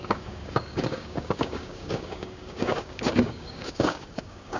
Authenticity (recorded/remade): remade